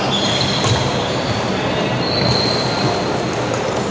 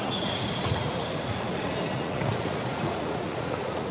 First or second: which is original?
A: first